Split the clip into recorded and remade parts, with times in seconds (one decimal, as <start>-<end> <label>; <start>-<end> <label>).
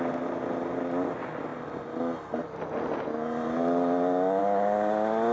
0.0-5.3 recorded